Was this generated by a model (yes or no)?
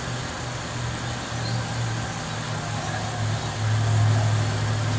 no